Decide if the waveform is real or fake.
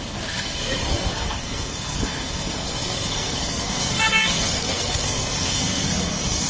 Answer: fake